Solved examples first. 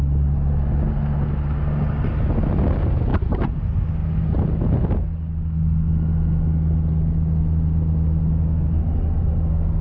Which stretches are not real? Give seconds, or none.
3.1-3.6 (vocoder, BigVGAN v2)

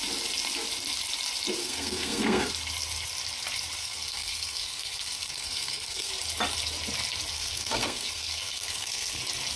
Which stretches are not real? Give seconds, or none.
1.6-2.5 (codec, SNAC); 3.8-6.1; 7.3-9.2

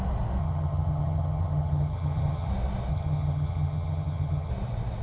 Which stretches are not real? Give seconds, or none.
0.4-2.5 (vocoder, HiFi-GAN); 2.9-4.5